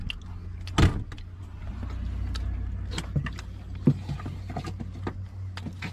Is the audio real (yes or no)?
yes